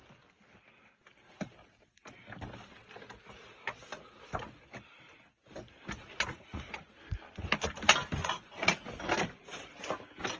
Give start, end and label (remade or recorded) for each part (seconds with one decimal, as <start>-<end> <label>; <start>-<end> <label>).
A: 0.0-6.0 recorded; 6.0-6.7 remade; 6.7-8.2 recorded; 8.2-9.1 remade; 9.1-10.4 recorded